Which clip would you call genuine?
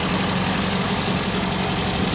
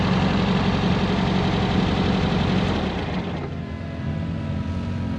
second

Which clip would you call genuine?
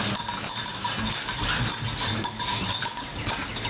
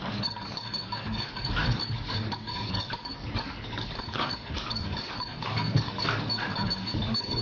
first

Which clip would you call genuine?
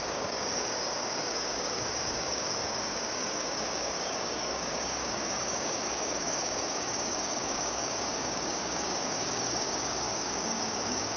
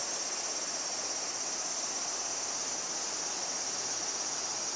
second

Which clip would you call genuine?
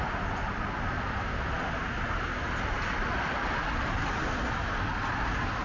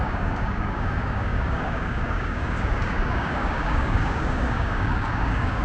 first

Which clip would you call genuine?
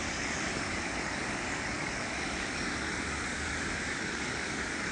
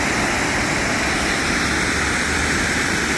second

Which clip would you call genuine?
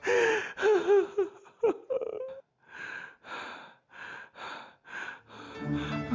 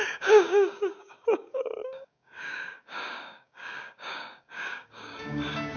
first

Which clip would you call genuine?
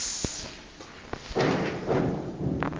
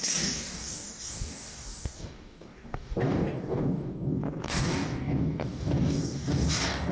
first